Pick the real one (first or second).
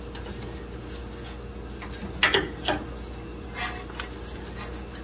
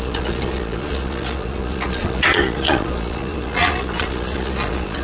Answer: first